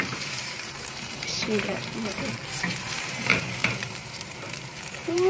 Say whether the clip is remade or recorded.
remade